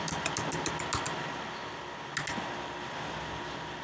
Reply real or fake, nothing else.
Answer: real